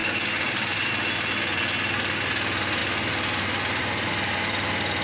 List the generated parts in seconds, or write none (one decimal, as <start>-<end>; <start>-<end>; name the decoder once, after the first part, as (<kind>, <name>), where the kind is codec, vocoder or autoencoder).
0.0-0.9 (codec, DAC)